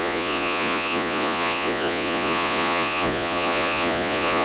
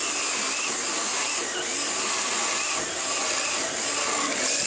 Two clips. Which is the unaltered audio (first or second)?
second